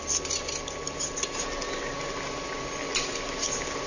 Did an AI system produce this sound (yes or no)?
no